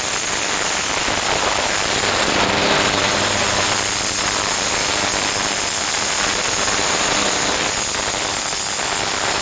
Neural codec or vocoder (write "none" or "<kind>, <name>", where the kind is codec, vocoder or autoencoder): none